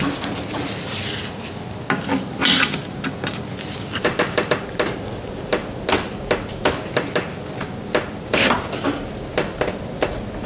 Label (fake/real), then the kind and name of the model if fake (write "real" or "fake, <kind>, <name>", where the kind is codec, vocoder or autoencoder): real